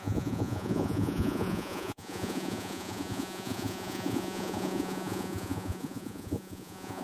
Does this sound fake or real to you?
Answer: fake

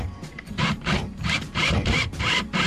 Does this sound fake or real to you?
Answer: fake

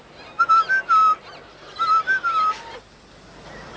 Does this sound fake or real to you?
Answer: real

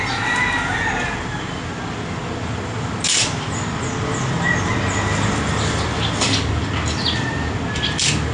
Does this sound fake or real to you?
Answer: real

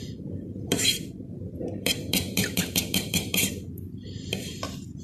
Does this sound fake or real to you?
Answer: fake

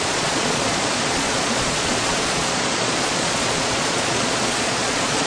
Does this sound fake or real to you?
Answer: fake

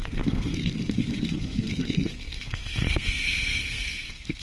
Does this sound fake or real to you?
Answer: fake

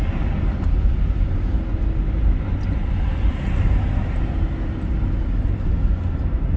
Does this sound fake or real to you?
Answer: real